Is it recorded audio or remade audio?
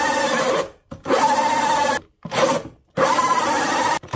recorded